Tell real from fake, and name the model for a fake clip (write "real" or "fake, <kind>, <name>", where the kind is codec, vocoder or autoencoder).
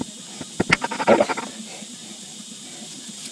real